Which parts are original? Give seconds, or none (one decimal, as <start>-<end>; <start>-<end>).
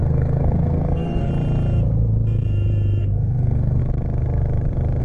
1.3-3.0; 3.8-5.0